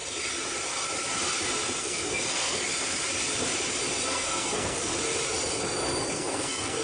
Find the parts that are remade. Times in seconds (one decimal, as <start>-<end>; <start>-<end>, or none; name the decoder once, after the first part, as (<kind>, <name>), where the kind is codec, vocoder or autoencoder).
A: 1.8-2.6 (codec, SNAC); 4.1-4.9; 6.1-6.8